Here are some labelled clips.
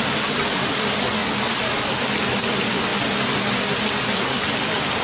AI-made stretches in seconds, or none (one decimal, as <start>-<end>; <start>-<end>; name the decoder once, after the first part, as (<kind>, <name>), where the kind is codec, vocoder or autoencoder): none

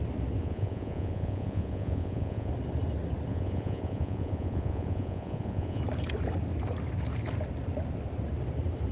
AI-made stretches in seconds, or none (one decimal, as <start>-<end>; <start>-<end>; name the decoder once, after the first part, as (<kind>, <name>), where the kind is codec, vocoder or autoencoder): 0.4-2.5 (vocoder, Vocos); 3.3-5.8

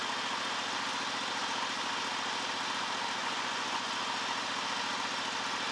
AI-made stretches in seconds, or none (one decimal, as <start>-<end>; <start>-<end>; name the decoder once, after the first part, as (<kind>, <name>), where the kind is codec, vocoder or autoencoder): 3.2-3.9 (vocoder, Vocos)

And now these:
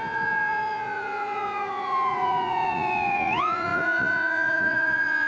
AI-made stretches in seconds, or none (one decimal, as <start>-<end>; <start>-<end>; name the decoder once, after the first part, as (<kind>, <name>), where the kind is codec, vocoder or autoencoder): 0.0-5.3 (vocoder, Vocos)